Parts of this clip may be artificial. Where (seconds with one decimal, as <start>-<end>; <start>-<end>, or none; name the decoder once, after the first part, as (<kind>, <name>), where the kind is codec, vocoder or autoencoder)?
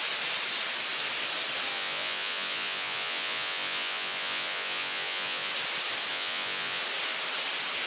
1.7-5.5 (vocoder, Vocos); 6.1-6.8